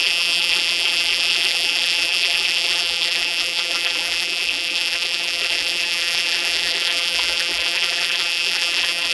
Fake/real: fake